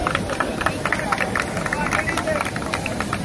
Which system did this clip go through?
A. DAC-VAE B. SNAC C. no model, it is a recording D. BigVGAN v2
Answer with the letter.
C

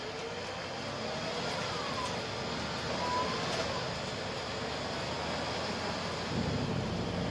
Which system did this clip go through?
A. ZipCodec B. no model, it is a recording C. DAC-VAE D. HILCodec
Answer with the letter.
B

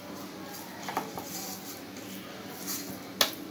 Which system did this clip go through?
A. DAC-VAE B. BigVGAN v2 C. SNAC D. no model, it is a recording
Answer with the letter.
D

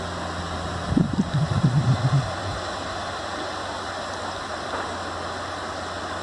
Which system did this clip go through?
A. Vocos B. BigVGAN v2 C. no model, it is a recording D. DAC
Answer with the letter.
C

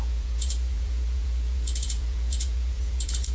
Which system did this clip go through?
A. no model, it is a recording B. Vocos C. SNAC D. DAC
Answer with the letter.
B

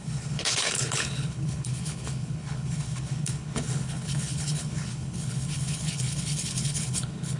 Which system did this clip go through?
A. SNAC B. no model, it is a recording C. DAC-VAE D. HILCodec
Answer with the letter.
D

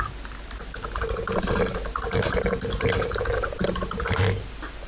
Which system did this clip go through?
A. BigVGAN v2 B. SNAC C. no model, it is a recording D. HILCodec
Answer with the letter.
C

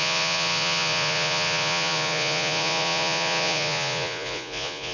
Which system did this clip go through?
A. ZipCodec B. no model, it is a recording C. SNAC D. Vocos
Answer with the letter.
D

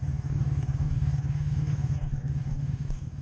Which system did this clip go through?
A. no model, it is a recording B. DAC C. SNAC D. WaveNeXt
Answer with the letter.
B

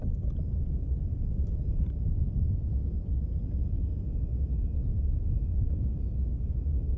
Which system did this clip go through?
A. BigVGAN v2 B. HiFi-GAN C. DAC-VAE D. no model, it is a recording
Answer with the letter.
D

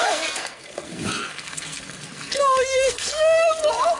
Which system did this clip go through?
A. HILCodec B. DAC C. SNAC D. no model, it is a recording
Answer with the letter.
C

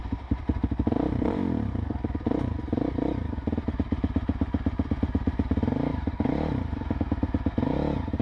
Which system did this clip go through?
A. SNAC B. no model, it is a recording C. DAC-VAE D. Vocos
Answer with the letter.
B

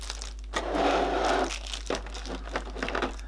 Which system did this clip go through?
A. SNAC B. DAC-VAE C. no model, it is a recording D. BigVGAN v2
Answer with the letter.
C